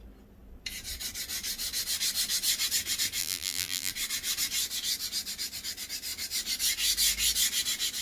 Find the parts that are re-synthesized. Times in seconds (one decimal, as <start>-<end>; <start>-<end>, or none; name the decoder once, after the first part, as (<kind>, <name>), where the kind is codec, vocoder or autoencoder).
3.2-3.9 (vocoder, BigVGAN v2)